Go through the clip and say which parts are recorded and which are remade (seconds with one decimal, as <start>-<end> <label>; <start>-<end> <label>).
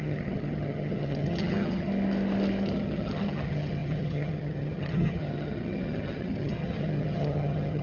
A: 0.0-1.9 remade; 1.9-2.6 recorded; 2.6-7.8 remade